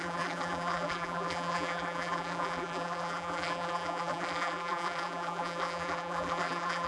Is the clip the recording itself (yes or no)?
no